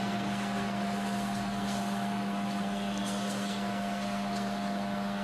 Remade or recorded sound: remade